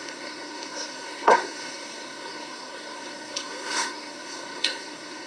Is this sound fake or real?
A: fake